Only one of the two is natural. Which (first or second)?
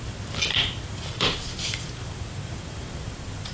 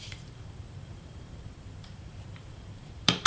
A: first